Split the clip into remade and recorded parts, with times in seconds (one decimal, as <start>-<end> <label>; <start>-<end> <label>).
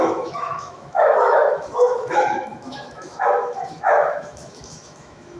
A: 0.0-5.4 remade